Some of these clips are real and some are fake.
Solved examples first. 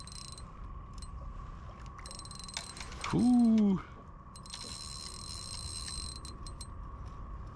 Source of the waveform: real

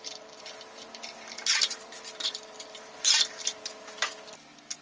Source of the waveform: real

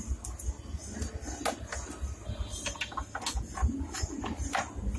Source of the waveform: real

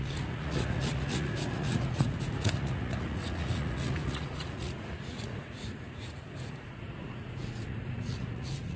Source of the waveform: fake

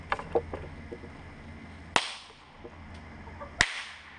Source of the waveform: real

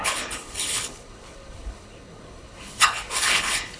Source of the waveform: fake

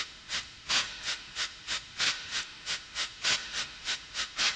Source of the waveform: fake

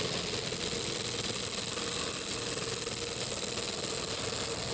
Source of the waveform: real